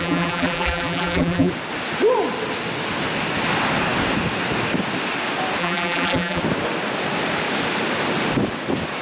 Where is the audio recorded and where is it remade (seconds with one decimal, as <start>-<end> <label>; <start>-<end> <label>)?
0.0-1.5 remade; 1.5-5.6 recorded; 5.6-6.4 remade; 6.4-9.0 recorded